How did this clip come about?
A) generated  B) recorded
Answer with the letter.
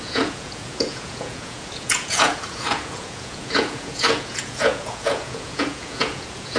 A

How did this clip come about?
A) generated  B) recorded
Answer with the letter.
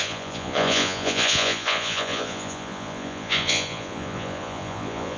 A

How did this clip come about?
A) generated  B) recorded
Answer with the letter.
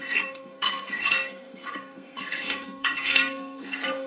A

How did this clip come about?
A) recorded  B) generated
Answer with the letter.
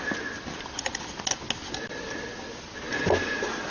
A